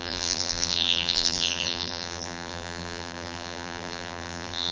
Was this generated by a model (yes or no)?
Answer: yes